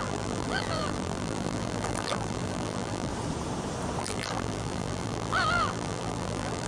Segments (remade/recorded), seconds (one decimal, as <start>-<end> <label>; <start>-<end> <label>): 0.0-3.1 remade; 3.1-4.0 recorded; 4.0-6.7 remade